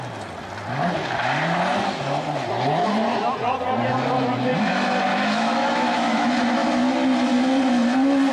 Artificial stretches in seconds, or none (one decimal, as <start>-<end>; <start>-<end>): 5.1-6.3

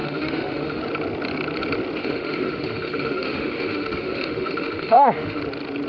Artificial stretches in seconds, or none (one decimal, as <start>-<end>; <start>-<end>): 0.0-0.8; 2.0-5.4

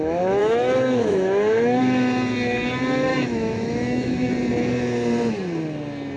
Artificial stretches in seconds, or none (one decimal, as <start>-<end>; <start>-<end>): 0.4-1.8; 3.1-4.3

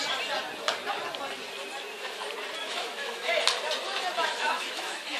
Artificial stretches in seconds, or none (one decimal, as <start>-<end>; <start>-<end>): 2.6-3.3; 4.2-5.2

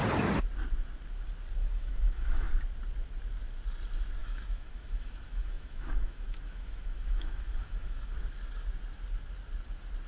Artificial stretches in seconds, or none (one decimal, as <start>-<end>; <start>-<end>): 1.6-2.5; 4.2-8.1

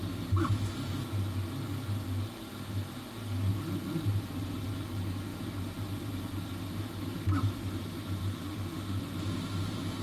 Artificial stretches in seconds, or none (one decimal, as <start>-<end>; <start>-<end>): 8.2-9.0

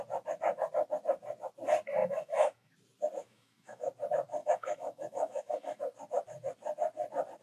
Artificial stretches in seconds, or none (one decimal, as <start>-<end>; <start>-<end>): 2.0-2.7; 3.2-3.9; 4.4-5.8